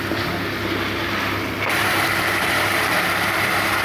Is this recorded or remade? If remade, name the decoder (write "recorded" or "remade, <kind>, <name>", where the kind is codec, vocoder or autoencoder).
remade, vocoder, BigVGAN v2